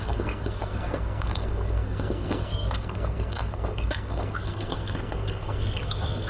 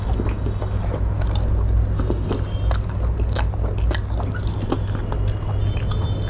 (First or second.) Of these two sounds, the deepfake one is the first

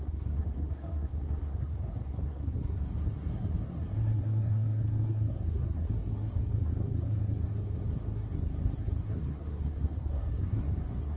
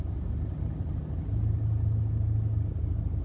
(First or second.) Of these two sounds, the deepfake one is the first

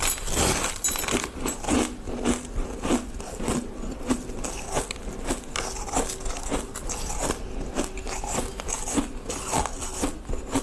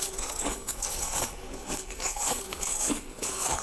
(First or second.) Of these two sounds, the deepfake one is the second